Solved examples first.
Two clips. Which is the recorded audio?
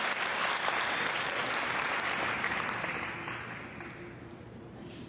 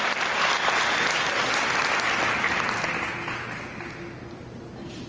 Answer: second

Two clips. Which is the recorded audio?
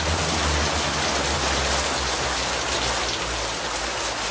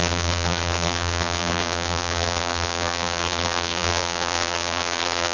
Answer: first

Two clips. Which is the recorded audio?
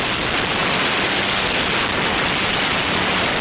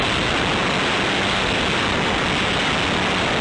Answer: second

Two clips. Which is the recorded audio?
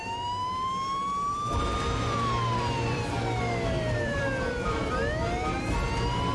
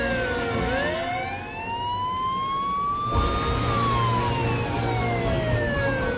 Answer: second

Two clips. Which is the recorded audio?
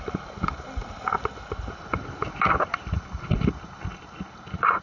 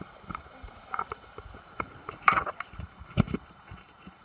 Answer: first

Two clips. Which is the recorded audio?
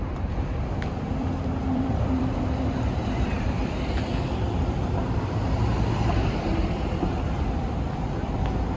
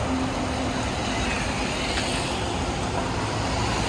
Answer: second